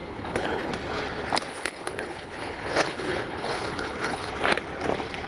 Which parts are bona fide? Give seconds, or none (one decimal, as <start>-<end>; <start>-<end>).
0.7-1.5; 4.3-5.3